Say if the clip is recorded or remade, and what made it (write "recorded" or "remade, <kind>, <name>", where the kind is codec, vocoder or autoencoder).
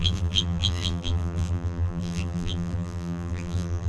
remade, vocoder, BigVGAN v2